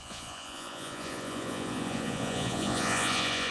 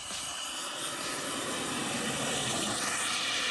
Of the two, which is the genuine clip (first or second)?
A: second